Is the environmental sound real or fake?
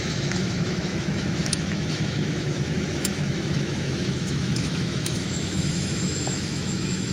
fake